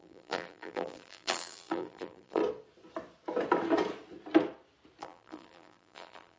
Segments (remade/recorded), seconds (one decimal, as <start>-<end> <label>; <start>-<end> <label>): 0.0-2.4 remade; 2.4-5.0 recorded; 5.0-6.4 remade